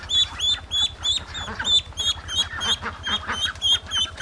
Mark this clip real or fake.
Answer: real